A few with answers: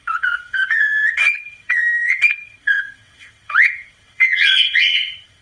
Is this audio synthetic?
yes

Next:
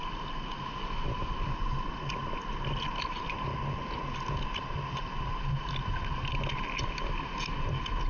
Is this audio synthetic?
no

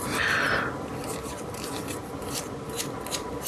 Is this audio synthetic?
no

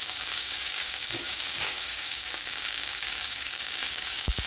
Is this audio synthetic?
yes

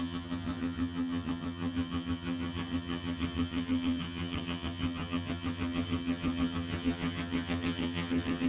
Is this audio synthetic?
yes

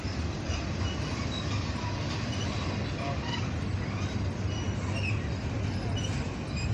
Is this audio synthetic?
no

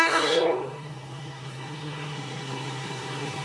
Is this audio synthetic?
yes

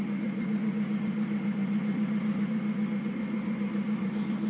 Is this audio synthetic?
yes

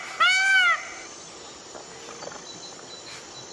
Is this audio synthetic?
no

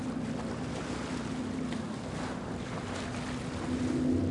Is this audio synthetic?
no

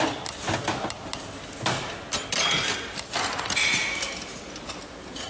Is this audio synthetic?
no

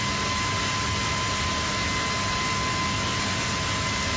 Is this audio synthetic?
no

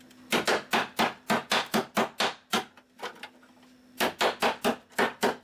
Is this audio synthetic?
no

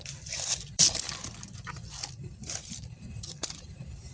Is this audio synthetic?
yes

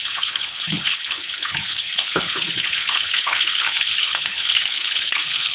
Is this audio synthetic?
yes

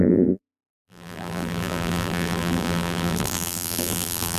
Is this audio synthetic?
yes